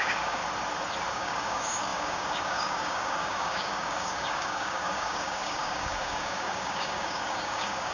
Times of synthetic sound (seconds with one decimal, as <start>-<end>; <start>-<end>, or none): 0.0-0.4; 1.1-7.9